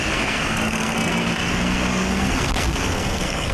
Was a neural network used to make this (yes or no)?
yes